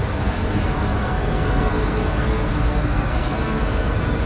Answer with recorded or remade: remade